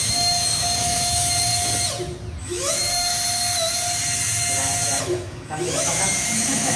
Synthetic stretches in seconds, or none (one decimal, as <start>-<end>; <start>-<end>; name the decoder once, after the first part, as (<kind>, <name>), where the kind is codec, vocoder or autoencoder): 0.0-1.5 (autoencoder, DAC-VAE); 2.4-3.1; 5.0-6.8